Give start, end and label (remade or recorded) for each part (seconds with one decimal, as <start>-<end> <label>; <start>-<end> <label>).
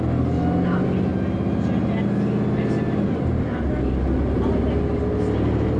0.0-5.8 recorded